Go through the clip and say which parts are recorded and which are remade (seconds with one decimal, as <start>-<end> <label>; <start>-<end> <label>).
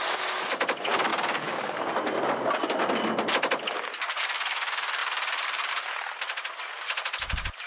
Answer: 0.0-1.1 recorded; 1.1-1.8 remade; 1.8-7.7 recorded